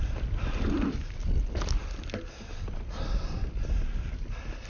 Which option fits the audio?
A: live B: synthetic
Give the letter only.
A